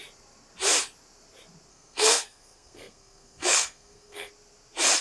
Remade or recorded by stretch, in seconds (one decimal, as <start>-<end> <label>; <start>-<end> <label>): 0.0-1.7 recorded; 1.7-4.3 remade; 4.3-5.0 recorded